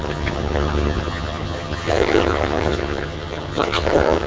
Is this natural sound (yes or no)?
no